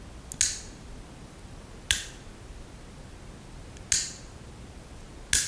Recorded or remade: recorded